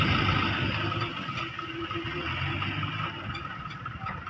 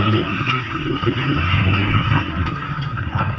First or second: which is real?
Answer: first